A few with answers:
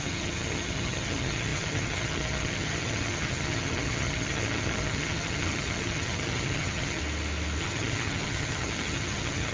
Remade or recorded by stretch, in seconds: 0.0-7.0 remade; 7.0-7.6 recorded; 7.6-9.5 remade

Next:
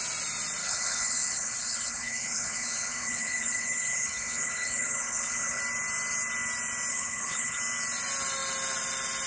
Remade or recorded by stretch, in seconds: 0.0-0.6 recorded; 0.6-5.6 remade; 5.6-6.9 recorded; 6.9-7.6 remade; 7.6-9.3 recorded